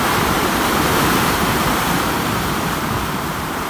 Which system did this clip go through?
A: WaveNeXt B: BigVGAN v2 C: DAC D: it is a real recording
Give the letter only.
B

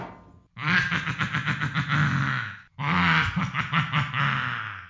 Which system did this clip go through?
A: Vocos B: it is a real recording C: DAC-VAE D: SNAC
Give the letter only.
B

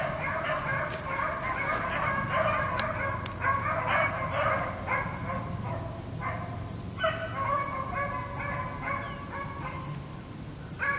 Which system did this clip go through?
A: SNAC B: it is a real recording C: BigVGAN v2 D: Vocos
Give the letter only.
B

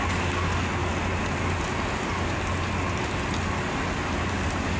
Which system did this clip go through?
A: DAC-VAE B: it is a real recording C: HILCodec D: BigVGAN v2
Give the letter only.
B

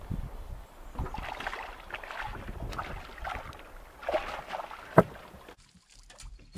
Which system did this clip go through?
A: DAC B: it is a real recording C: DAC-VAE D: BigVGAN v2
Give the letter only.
B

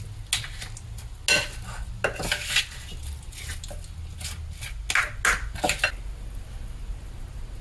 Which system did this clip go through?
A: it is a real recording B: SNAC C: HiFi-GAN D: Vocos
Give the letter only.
A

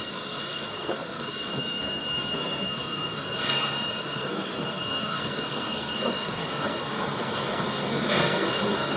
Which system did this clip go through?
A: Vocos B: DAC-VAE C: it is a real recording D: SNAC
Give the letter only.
D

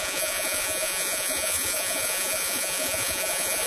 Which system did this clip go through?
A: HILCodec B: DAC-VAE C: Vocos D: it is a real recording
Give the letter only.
C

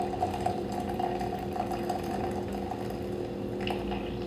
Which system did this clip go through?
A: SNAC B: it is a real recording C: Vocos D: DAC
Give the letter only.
B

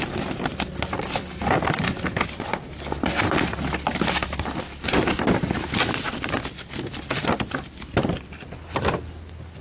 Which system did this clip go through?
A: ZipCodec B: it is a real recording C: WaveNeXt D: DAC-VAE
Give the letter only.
B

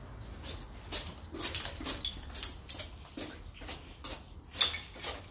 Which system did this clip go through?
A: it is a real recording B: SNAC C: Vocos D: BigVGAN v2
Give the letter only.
A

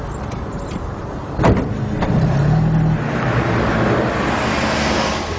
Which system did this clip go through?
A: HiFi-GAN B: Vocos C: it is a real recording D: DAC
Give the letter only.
C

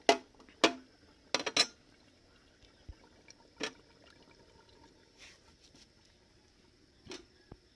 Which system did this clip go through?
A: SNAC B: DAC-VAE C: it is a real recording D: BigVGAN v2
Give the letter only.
C